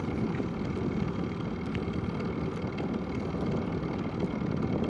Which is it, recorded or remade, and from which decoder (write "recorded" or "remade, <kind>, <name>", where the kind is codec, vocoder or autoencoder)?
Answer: recorded